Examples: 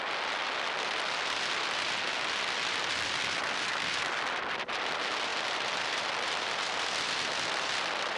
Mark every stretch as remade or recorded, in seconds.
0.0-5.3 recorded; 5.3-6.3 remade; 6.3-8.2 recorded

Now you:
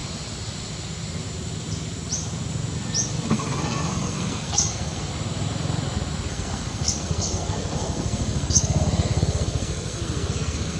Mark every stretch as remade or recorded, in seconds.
0.0-3.3 recorded; 3.3-5.1 remade; 5.1-6.3 recorded; 6.3-10.8 remade

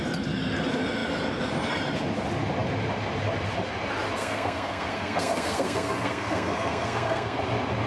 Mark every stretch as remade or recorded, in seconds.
0.0-4.2 recorded; 4.2-7.4 remade; 7.4-7.9 recorded

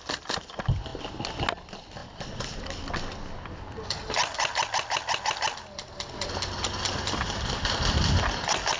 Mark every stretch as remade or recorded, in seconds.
0.0-8.8 recorded

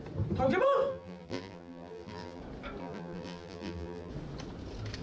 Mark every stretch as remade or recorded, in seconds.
0.0-0.9 recorded; 0.9-2.4 remade; 2.4-2.8 recorded; 2.8-4.1 remade; 4.1-5.0 recorded